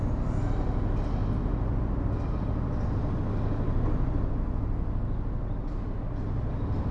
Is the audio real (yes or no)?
yes